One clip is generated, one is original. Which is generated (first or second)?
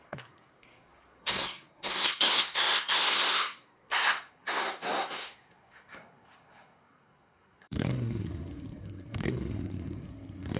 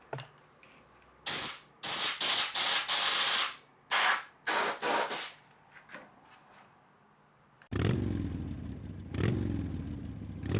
first